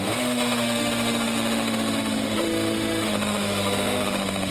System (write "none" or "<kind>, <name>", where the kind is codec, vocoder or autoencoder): autoencoder, DAC-VAE